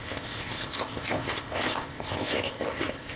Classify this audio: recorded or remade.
remade